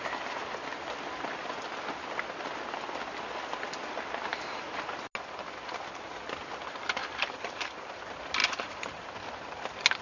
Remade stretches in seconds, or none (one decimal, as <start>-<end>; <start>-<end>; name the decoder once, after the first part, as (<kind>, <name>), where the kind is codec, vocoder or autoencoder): 4.3-4.8 (vocoder, BigVGAN v2); 7.0-8.0; 8.4-9.0